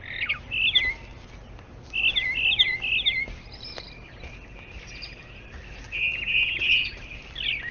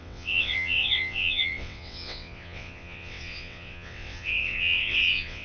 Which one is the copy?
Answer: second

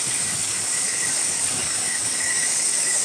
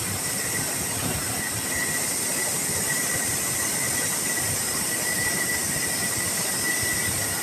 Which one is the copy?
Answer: first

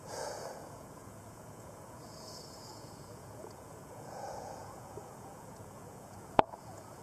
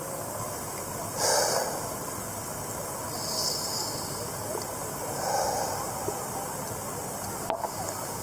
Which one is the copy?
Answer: first